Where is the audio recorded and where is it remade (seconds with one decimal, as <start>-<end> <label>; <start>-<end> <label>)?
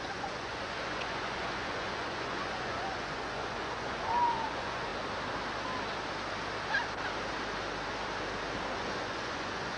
0.0-4.9 remade; 4.9-8.8 recorded; 8.8-9.8 remade